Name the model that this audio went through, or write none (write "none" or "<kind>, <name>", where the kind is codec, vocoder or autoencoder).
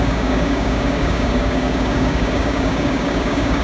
codec, DAC